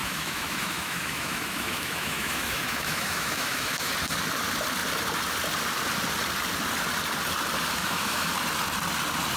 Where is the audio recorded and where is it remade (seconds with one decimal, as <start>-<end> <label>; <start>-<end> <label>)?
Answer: 0.0-3.9 remade; 3.9-7.8 recorded; 7.8-8.3 remade; 8.3-9.4 recorded